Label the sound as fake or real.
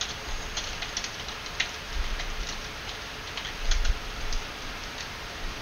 real